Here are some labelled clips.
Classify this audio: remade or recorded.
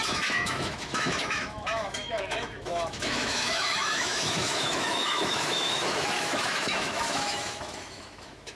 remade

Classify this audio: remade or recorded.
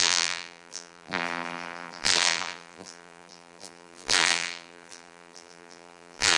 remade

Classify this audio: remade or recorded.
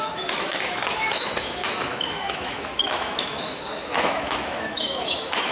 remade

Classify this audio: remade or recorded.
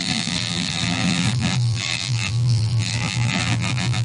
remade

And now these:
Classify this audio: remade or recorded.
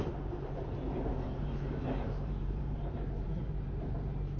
remade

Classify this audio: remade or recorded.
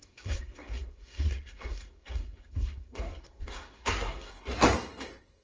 remade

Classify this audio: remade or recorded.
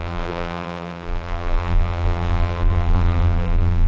remade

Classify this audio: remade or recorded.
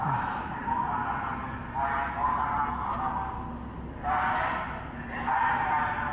recorded